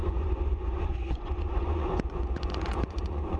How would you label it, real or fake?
fake